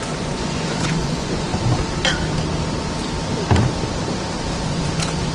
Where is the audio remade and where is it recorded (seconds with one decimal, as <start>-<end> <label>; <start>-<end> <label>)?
0.0-1.5 remade; 1.5-4.6 recorded; 4.6-5.3 remade